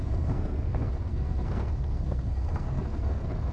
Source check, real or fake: fake